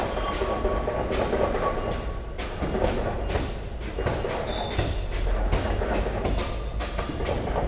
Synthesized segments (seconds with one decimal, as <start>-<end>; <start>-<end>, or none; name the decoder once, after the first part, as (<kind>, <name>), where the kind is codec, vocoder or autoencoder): none